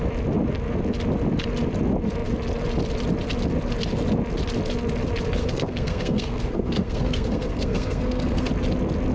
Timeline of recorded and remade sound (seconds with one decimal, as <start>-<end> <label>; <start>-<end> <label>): 0.0-5.4 recorded; 5.4-8.5 remade; 8.5-9.1 recorded